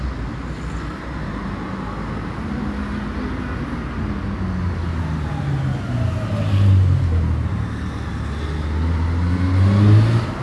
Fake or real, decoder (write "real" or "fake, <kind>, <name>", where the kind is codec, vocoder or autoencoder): real